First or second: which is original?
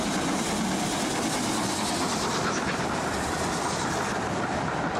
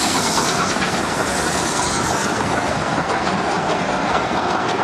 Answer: first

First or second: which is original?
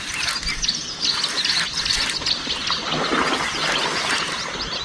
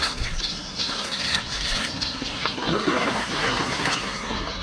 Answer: first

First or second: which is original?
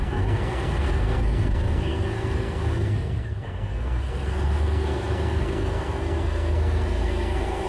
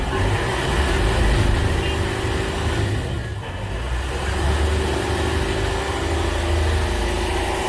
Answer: second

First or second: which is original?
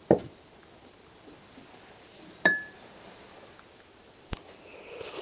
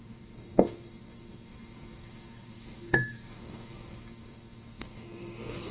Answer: first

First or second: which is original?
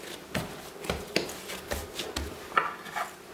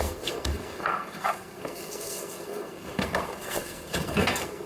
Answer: first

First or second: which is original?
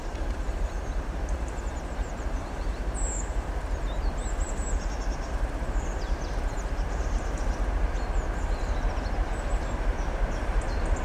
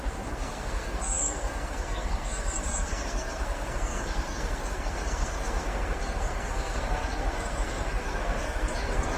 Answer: first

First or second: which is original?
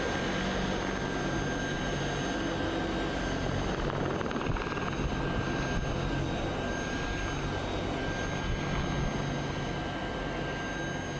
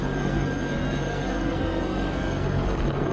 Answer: first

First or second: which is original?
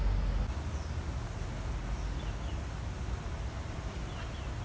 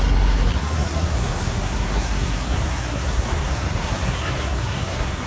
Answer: first